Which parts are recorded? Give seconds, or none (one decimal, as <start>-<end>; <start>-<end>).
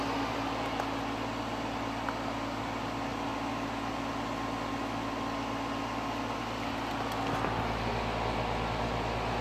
0.0-9.4